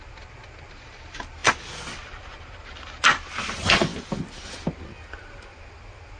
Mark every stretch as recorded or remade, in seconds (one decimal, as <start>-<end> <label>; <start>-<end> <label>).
0.0-6.2 recorded